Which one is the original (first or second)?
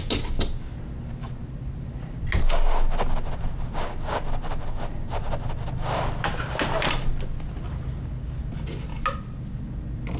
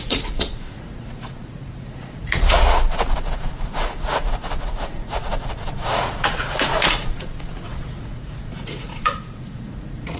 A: first